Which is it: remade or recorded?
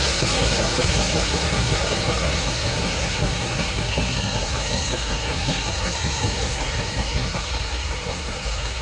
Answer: remade